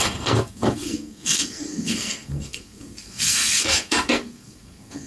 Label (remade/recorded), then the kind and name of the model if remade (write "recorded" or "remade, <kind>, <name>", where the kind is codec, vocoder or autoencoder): remade, codec, SNAC